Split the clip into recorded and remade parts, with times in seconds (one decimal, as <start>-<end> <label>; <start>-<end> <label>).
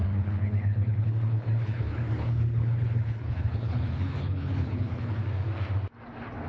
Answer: 0.0-5.2 remade; 5.2-6.5 recorded